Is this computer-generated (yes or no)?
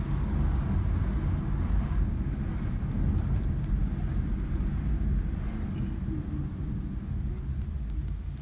no